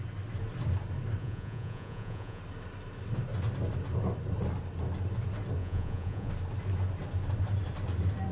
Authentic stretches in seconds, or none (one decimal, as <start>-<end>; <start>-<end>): 0.0-1.2; 2.4-5.6; 6.3-8.3